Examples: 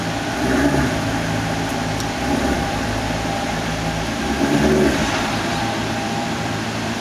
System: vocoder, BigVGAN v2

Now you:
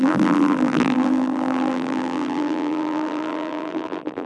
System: vocoder, BigVGAN v2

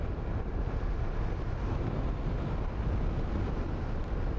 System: none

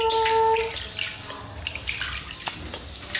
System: none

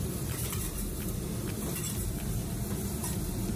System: vocoder, BigVGAN v2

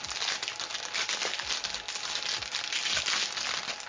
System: none